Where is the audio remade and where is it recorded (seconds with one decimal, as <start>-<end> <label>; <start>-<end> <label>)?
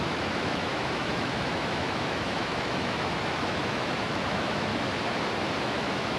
0.0-4.7 remade; 4.7-5.6 recorded; 5.6-6.2 remade